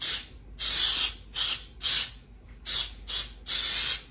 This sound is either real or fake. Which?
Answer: real